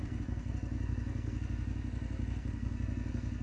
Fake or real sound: fake